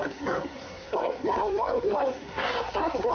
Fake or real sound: fake